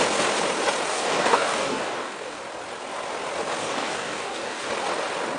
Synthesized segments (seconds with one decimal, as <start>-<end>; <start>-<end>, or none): 0.9-2.4; 3.6-4.7

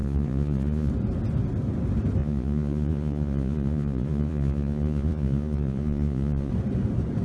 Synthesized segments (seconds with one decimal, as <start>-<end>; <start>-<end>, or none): 0.0-0.9; 2.2-6.5

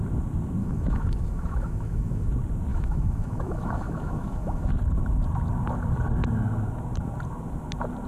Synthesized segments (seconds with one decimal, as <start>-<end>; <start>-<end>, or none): 0.6-2.3; 2.7-4.7

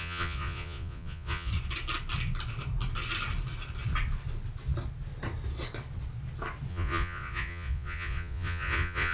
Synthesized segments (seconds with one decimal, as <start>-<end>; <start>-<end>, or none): 0.0-1.5; 6.7-9.1

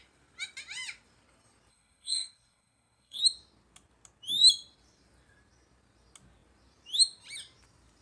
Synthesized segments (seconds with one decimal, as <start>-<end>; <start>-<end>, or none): 1.7-3.2

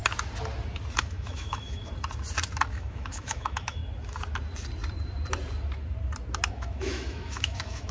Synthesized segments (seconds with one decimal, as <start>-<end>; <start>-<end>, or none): 1.0-1.9; 2.7-3.8; 6.5-7.9

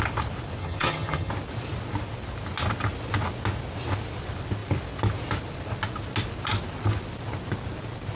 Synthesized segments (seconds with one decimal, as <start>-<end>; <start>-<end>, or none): 0.6-1.3